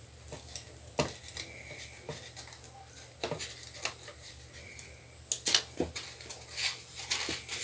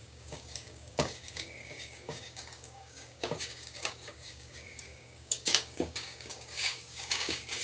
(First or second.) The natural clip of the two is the first